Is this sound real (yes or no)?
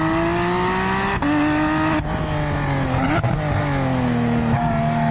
yes